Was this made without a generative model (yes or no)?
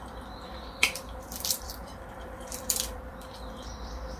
no